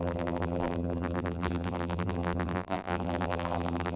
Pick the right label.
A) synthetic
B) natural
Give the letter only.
A